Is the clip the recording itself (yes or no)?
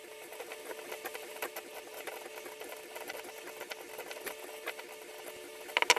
yes